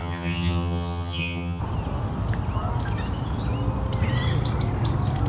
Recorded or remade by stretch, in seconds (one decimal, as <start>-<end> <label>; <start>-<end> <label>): 0.0-1.6 remade; 1.6-5.3 recorded